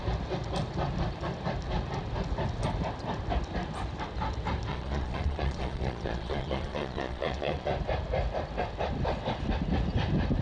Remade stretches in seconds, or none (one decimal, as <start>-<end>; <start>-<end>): 4.7-7.7